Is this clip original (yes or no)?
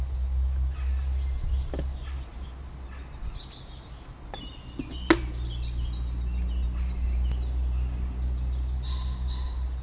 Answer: yes